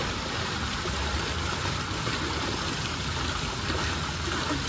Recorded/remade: recorded